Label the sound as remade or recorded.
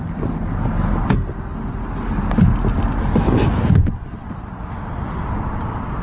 recorded